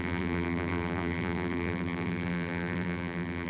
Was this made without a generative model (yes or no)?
no